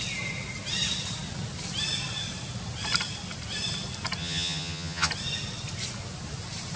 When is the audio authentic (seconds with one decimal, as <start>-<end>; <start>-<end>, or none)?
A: 0.0-4.2; 5.1-6.8